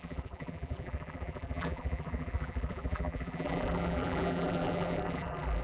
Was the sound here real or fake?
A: fake